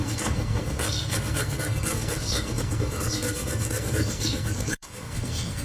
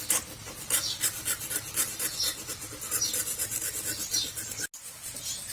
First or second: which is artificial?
first